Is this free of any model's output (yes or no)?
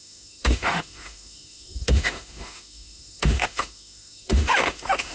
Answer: no